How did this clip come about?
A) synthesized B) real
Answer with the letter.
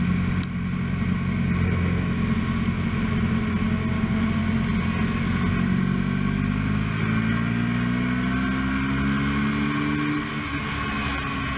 B